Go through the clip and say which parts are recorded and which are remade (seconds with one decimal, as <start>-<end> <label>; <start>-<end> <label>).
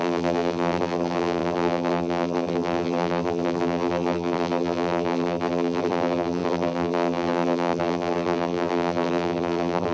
0.0-9.9 remade